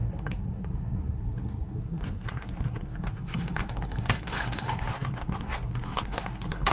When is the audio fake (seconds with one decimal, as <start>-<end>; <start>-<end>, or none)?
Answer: 0.0-6.7